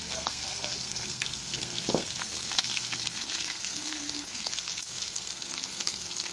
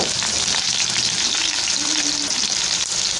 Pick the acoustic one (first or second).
second